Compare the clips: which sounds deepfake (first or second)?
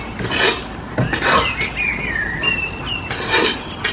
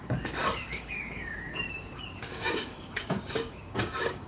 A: second